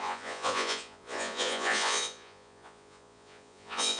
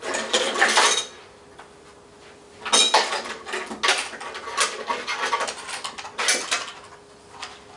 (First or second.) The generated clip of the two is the first